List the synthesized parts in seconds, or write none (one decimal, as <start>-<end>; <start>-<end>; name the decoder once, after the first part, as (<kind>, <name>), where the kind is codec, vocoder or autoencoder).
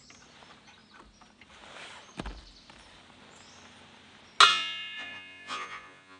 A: 4.5-6.2 (vocoder, Vocos)